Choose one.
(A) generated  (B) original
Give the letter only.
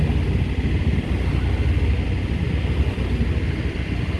B